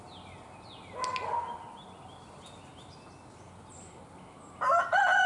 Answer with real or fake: real